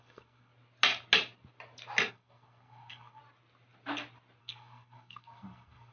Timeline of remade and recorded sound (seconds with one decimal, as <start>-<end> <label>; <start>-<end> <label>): 0.0-0.5 remade; 0.5-2.1 recorded; 2.1-3.2 remade; 3.2-4.4 recorded; 4.4-5.9 remade